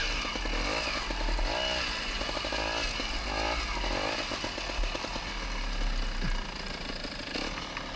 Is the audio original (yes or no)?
yes